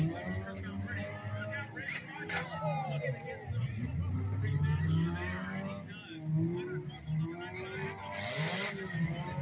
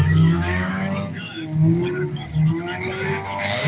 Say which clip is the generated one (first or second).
second